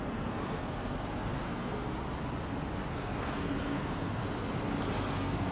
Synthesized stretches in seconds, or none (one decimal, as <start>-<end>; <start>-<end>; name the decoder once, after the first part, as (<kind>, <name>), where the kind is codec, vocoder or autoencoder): 0.0-1.8 (codec, SNAC); 2.9-4.2; 5.1-5.5